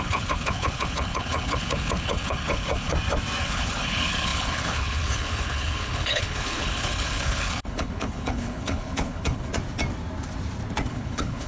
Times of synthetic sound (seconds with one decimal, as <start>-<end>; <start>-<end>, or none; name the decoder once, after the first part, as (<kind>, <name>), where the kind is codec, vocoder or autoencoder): 0.0-2.9 (codec, HILCodec); 3.4-9.5; 10.9-11.5